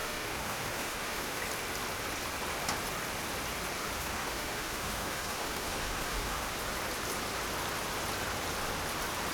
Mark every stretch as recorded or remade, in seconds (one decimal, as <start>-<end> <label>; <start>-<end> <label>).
0.0-1.4 remade; 1.4-3.8 recorded; 3.8-6.5 remade; 6.5-9.3 recorded